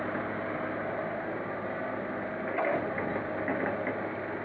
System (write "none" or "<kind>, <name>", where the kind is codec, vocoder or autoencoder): none